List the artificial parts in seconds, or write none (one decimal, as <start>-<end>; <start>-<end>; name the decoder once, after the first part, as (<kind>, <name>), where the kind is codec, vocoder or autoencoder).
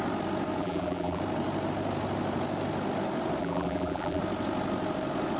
0.6-1.2 (vocoder, BigVGAN v2); 3.4-4.2